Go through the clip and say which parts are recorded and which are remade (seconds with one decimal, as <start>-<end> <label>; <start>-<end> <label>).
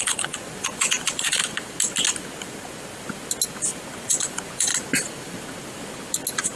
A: 0.0-1.4 remade; 1.4-4.0 recorded; 4.0-4.7 remade; 4.7-6.6 recorded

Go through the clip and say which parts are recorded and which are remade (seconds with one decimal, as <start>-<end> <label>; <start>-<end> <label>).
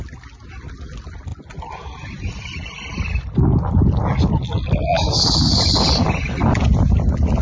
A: 0.0-7.4 recorded